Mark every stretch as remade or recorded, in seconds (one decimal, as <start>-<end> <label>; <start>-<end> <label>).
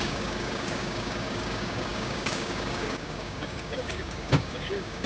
0.0-5.1 remade